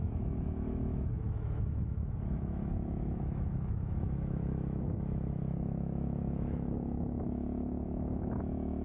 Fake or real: fake